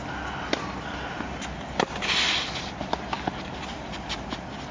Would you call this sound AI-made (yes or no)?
no